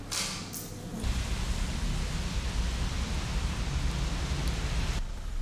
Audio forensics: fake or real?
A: real